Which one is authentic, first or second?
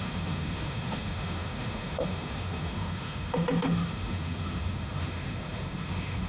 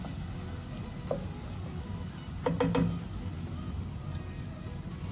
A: second